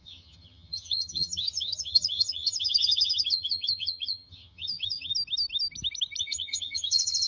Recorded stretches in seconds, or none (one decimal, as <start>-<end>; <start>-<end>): 5.1-6.2